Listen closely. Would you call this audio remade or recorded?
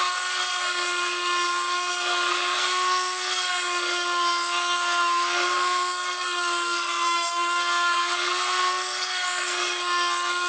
remade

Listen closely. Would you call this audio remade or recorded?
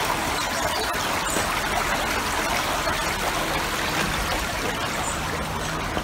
recorded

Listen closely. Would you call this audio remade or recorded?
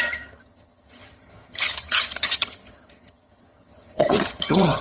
remade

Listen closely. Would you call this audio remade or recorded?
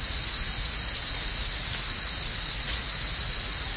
remade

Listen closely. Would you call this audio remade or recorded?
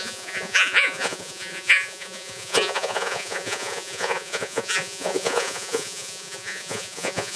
remade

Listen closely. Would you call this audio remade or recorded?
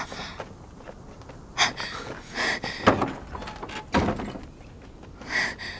recorded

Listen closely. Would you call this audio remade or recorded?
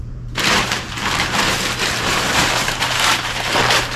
remade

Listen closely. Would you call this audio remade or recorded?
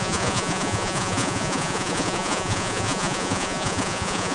remade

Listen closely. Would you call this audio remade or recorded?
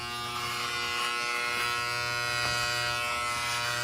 recorded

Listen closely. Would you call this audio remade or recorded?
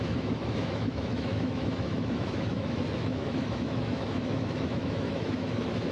remade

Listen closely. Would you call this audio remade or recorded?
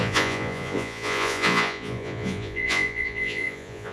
remade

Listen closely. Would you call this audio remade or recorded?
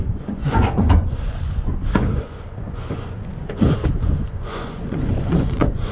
remade